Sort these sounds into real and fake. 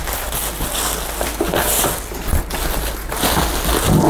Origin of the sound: real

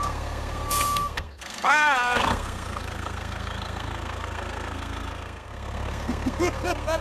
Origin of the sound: fake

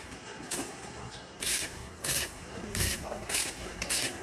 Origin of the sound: fake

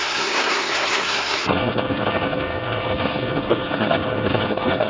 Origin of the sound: fake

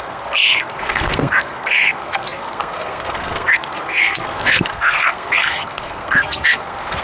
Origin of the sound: fake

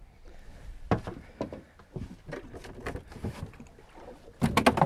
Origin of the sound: real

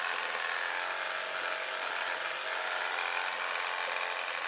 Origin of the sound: real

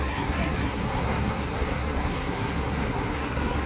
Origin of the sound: fake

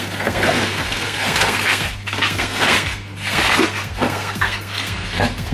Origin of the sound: fake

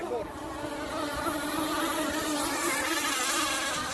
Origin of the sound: real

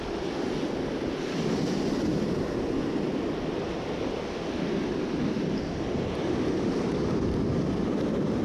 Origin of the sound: real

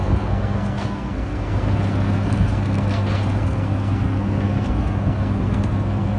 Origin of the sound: fake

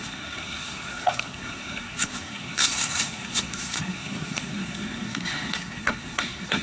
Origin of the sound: fake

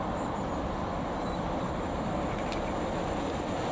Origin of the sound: real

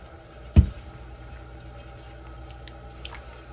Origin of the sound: real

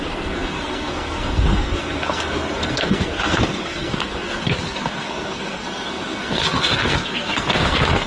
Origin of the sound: fake